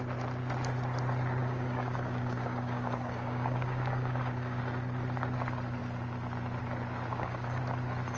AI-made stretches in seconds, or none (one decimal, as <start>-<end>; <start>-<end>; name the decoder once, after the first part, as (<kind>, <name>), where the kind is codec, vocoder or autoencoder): 1.4-4.6 (codec, DAC); 7.1-7.6